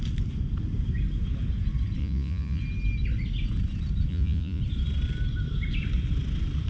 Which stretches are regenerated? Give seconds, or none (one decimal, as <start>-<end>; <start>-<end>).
2.0-2.6; 4.1-4.6

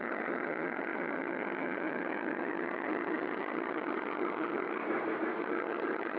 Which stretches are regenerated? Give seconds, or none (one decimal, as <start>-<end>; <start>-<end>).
0.0-4.8; 5.4-6.2

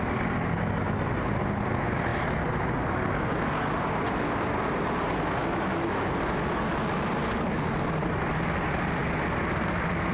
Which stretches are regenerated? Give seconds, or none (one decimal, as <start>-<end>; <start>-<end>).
5.4-6.1

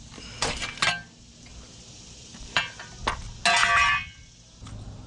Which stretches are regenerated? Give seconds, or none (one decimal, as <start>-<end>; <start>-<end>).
1.5-3.0

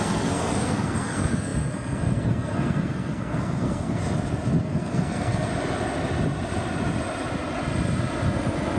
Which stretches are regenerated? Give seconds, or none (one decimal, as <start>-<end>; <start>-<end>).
0.0-4.0; 4.6-5.5

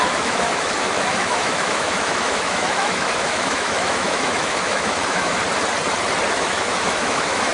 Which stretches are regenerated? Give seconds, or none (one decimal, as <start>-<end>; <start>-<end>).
0.0-5.4; 6.3-7.5

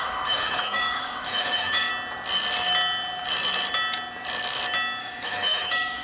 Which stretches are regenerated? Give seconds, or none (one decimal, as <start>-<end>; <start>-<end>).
0.0-1.9; 5.0-6.0